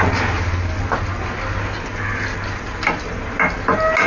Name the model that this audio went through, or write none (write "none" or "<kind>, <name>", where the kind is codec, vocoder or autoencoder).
none